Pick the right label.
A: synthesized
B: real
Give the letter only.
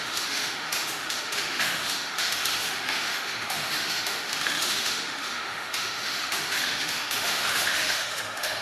A